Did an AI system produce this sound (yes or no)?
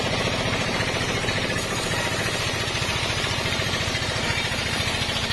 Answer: yes